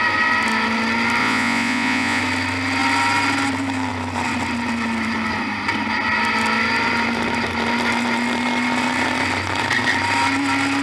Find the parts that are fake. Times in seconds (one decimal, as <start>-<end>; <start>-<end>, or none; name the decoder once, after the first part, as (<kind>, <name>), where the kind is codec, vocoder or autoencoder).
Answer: 1.2-2.2 (vocoder, Vocos)